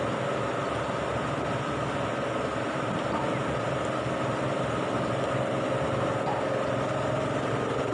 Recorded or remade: recorded